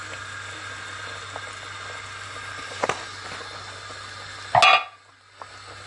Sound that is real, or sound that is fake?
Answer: real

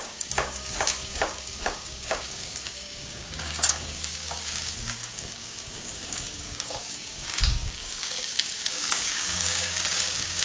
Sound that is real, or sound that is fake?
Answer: fake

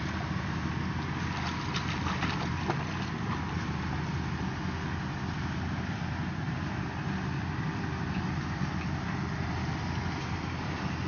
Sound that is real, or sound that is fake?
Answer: real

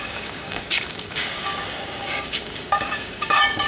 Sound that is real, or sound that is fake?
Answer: fake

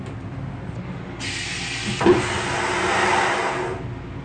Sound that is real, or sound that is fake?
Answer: real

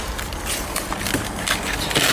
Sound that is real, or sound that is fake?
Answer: real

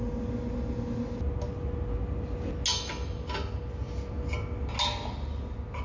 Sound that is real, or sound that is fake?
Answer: real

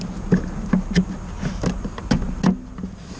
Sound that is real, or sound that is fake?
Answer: real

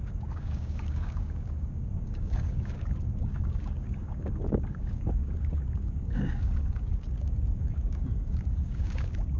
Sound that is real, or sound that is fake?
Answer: fake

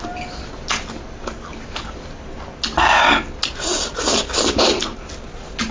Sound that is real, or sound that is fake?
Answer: real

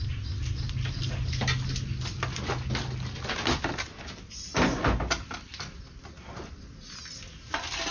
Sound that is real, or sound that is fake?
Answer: real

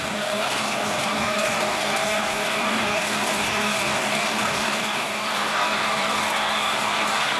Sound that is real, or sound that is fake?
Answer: fake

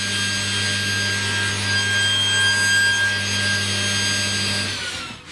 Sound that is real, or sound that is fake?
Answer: real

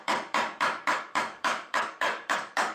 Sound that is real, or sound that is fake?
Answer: fake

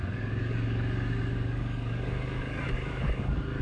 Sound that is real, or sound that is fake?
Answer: fake